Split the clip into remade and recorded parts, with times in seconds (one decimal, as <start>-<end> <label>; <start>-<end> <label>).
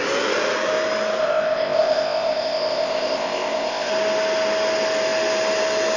0.0-1.2 recorded; 1.2-3.9 remade; 3.9-6.0 recorded